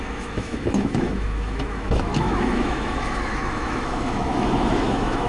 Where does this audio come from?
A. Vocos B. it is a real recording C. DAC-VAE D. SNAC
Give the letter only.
C